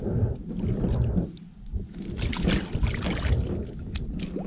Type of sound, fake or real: real